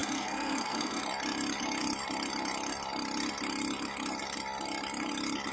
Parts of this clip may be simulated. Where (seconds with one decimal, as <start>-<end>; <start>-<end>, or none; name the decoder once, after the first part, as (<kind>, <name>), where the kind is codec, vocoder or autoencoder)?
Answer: 0.0-1.0 (codec, SNAC)